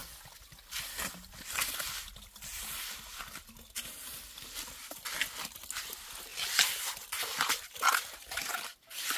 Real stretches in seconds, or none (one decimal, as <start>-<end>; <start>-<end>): 0.0-6.3; 7.0-9.2